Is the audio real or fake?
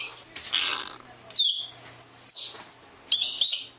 real